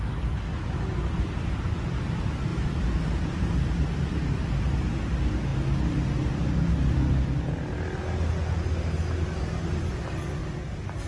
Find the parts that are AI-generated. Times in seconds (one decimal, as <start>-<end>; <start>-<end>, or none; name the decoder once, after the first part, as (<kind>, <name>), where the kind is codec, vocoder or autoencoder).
2.5-3.4 (vocoder, BigVGAN v2)